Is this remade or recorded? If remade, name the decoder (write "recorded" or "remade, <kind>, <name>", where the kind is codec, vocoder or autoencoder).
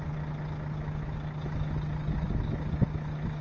recorded